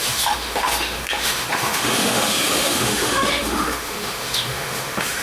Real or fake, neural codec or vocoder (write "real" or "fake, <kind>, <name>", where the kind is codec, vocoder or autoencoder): fake, autoencoder, DAC-VAE